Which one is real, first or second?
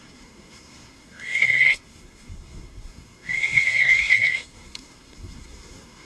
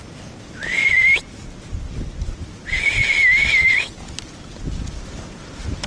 second